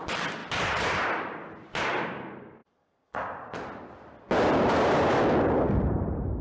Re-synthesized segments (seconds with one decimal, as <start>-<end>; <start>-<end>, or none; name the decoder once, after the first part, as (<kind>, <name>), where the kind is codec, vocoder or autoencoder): 0.4-1.8 (vocoder, BigVGAN v2); 2.6-5.2